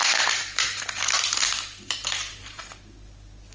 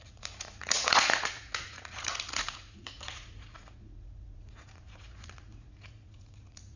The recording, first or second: first